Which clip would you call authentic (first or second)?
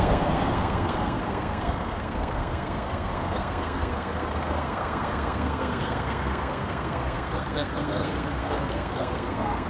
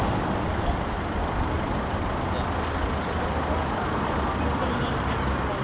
second